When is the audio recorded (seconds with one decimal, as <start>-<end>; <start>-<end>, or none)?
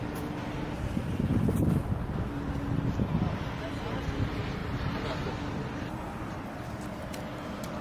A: 0.0-4.6; 5.3-7.8